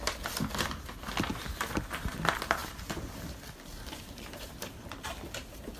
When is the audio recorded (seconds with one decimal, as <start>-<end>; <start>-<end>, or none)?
0.0-5.8